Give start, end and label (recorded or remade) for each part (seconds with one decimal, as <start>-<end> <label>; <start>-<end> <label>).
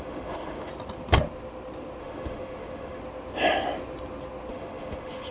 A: 0.0-0.7 remade; 0.7-2.0 recorded; 2.0-3.0 remade; 3.0-4.5 recorded; 4.5-5.3 remade